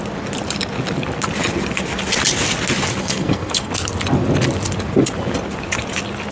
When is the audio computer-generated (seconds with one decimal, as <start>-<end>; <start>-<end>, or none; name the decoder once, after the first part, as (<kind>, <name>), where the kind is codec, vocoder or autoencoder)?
3.0-3.7 (codec, SNAC)